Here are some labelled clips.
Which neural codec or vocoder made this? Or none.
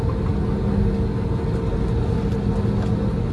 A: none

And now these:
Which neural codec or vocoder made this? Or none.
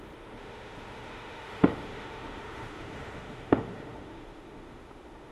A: autoencoder, DAC-VAE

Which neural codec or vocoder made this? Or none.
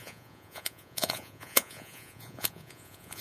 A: vocoder, Vocos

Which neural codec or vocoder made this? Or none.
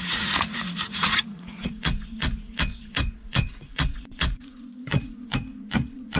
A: vocoder, Vocos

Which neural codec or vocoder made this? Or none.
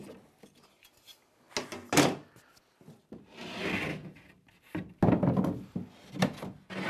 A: none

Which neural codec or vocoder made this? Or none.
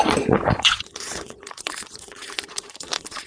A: vocoder, Vocos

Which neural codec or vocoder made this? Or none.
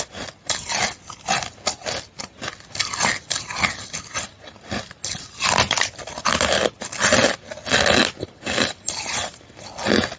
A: none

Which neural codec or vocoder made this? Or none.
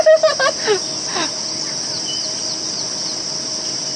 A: none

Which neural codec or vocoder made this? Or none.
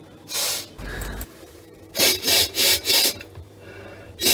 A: vocoder, BigVGAN v2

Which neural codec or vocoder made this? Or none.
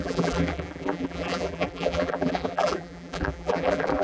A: vocoder, BigVGAN v2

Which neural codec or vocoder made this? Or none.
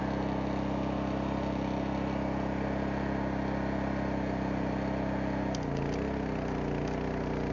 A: none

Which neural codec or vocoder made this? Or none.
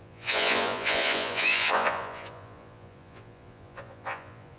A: vocoder, Vocos